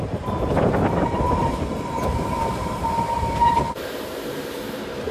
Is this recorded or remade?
remade